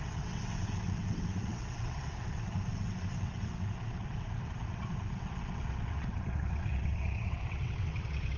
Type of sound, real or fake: fake